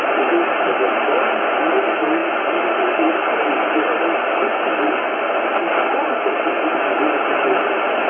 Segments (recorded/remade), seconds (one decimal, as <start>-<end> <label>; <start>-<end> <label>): 0.0-8.1 recorded